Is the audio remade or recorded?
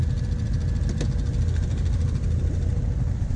recorded